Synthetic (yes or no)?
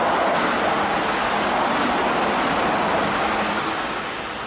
no